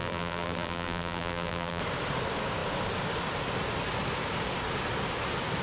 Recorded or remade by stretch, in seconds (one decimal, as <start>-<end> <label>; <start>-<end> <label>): 0.0-1.8 remade; 1.8-5.6 recorded

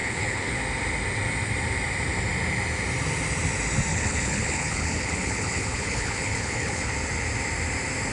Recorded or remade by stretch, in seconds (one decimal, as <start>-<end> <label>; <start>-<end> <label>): 0.0-0.6 remade; 0.6-3.9 recorded; 3.9-6.9 remade; 6.9-8.1 recorded

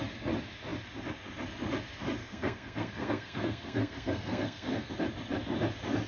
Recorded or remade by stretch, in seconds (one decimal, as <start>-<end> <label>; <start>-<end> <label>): 0.0-2.2 recorded; 2.2-4.9 remade; 4.9-6.1 recorded

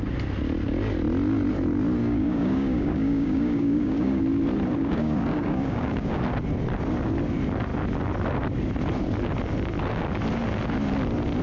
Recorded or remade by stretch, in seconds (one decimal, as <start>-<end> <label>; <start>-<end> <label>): 0.0-2.0 recorded; 2.0-4.2 remade; 4.2-4.8 recorded; 4.8-6.2 remade; 6.2-11.4 recorded

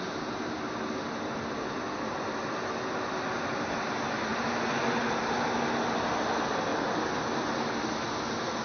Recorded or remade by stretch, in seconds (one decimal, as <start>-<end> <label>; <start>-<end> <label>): 0.0-8.6 recorded